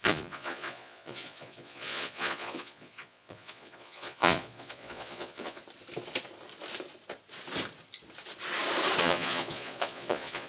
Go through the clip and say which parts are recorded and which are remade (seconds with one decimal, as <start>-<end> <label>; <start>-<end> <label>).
0.0-5.6 remade; 5.6-9.0 recorded; 9.0-10.5 remade

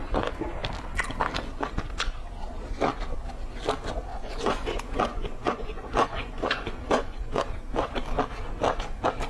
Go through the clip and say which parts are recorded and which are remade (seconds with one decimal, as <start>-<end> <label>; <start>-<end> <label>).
0.0-4.1 recorded; 4.1-7.4 remade; 7.4-9.3 recorded

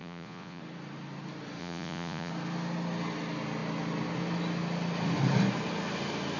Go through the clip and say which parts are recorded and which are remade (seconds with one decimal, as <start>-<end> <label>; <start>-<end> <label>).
0.0-0.6 remade; 0.6-1.6 recorded; 1.6-2.3 remade; 2.3-6.4 recorded

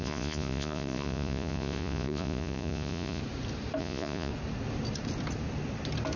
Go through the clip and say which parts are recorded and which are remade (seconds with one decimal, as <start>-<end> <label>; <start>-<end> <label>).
0.0-3.2 remade; 3.2-3.8 recorded; 3.8-4.3 remade; 4.3-6.2 recorded

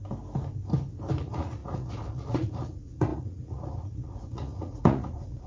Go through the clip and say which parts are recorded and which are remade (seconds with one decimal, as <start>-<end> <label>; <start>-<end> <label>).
0.0-1.2 recorded; 1.2-5.5 remade

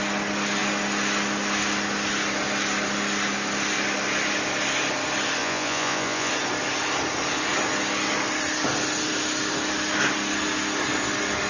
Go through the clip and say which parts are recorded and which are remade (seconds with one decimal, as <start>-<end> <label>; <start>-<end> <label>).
0.0-5.4 recorded; 5.4-6.3 remade; 6.3-11.5 recorded

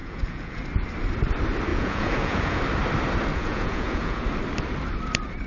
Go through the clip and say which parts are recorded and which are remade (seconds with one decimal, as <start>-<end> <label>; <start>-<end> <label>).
0.0-0.6 remade; 0.6-1.7 recorded; 1.7-2.6 remade; 2.6-3.3 recorded; 3.3-4.2 remade; 4.2-5.5 recorded

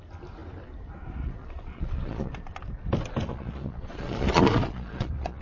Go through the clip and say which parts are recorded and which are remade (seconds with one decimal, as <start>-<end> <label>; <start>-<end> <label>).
0.0-1.4 recorded; 1.4-2.3 remade; 2.3-3.3 recorded; 3.3-5.4 remade